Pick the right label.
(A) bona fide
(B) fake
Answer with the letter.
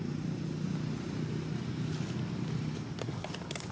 A